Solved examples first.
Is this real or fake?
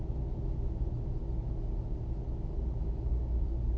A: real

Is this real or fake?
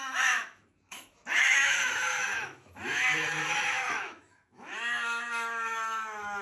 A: fake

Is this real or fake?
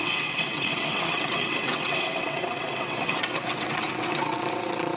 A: fake